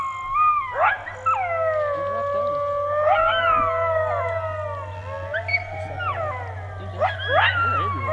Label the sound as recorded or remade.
recorded